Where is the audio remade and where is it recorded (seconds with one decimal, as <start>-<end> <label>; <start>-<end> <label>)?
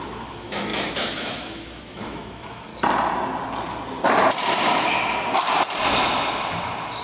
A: 0.0-2.7 remade; 2.7-7.0 recorded